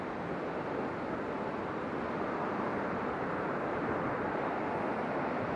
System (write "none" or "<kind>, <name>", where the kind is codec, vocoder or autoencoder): vocoder, BigVGAN v2